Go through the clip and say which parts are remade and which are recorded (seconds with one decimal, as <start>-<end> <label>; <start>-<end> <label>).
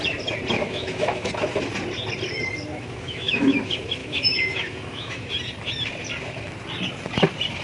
0.0-0.6 recorded; 0.6-1.3 remade; 1.3-2.7 recorded; 2.7-3.6 remade; 3.6-4.0 recorded; 4.0-5.3 remade; 5.3-7.6 recorded